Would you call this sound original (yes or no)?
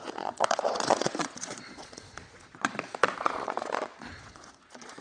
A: no